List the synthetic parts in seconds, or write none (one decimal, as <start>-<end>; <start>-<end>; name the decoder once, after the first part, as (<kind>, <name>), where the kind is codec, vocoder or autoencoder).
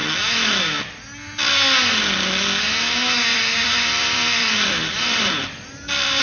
3.3-6.2 (vocoder, BigVGAN v2)